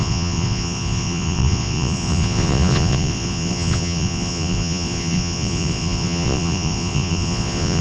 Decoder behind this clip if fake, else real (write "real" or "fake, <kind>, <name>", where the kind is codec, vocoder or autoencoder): fake, vocoder, Vocos